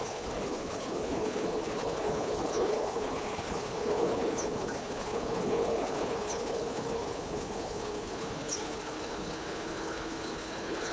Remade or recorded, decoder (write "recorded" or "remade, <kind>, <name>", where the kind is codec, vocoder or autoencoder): remade, codec, HILCodec